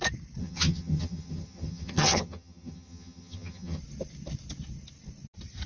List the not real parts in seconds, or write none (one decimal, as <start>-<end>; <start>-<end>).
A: 0.4-3.8